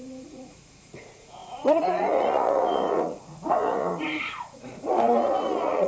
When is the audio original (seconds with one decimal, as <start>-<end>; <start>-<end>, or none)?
none